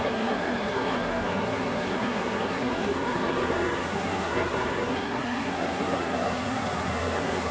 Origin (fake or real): fake